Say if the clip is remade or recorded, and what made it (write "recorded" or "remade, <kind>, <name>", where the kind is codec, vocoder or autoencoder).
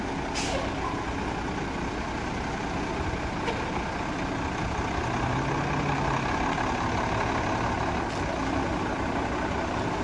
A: recorded